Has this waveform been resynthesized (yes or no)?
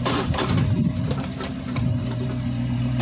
yes